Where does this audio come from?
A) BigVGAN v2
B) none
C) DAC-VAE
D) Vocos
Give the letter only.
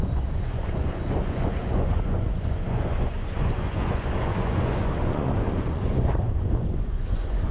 D